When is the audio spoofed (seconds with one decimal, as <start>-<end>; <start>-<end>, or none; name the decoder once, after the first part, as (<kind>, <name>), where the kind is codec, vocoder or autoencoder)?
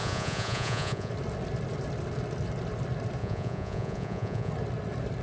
0.0-1.1 (vocoder, Vocos); 3.2-4.5